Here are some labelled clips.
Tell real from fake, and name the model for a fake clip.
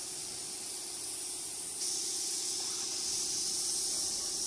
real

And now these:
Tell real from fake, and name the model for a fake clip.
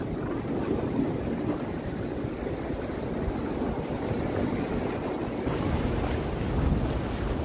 real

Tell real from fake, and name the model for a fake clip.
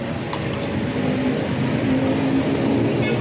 real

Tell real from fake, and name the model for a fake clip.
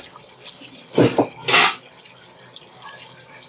real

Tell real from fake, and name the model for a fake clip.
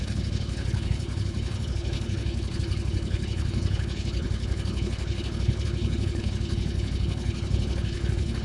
fake, codec, HILCodec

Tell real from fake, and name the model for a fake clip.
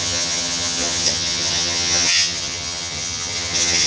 fake, vocoder, HiFi-GAN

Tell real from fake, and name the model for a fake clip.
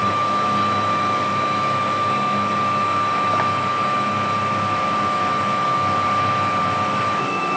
fake, autoencoder, DAC-VAE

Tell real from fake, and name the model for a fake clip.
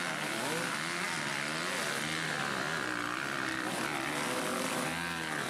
real